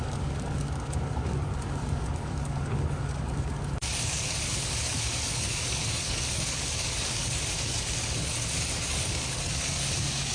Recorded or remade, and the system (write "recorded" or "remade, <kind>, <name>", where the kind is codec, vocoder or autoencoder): remade, codec, DAC